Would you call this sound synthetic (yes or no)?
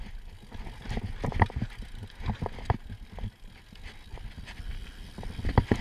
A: no